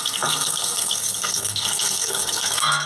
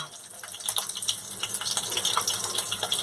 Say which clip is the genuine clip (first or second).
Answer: second